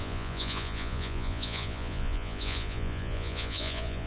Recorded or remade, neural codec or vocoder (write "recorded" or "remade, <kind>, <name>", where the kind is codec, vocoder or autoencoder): remade, vocoder, Vocos